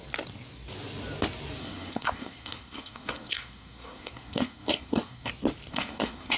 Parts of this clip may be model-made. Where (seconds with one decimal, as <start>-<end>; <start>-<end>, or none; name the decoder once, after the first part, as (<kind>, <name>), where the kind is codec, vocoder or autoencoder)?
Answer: 1.6-5.3 (codec, SNAC); 5.7-6.4